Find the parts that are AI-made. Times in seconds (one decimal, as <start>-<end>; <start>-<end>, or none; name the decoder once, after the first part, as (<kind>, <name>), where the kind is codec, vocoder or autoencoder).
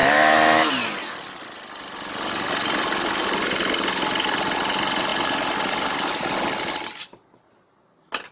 0.0-0.7 (autoencoder, DAC-VAE)